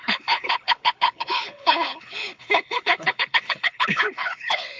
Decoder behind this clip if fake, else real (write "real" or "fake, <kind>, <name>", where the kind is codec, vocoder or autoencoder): fake, codec, HILCodec